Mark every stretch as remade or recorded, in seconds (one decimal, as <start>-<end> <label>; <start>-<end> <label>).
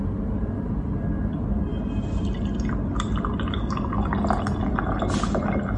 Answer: 0.0-5.8 recorded